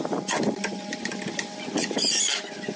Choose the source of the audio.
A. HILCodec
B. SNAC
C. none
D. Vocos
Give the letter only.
C